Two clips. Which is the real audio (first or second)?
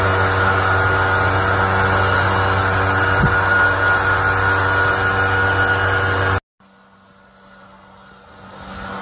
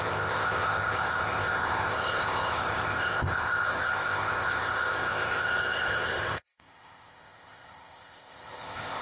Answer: first